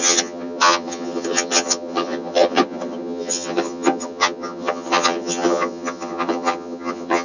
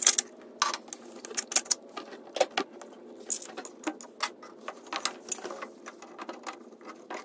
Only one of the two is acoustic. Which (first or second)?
second